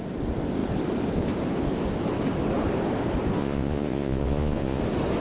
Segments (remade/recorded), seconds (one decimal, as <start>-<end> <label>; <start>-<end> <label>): 0.0-3.4 recorded; 3.4-4.8 remade; 4.8-5.2 recorded